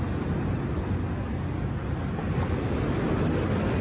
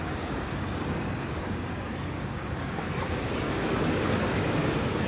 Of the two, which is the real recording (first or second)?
first